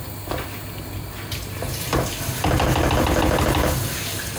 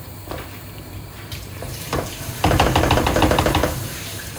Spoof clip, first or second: second